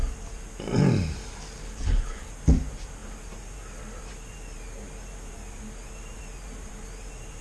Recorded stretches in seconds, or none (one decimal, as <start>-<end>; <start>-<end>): 0.0-1.6; 2.3-7.4